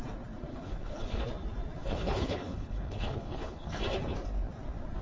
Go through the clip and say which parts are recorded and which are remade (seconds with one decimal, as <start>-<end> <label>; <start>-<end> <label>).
0.0-0.5 recorded; 0.5-1.2 remade; 1.2-1.8 recorded; 1.8-3.8 remade; 3.8-5.0 recorded